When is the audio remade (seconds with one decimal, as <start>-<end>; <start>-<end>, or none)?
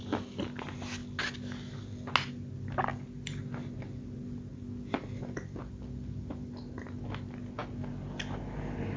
none